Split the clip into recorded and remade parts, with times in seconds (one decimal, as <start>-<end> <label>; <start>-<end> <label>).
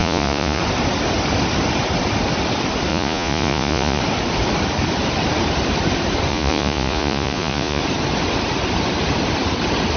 0.0-0.6 remade; 0.6-2.9 recorded; 2.9-4.0 remade; 4.0-6.3 recorded; 6.3-7.8 remade; 7.8-10.0 recorded